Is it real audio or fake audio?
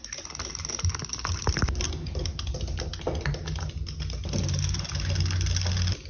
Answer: real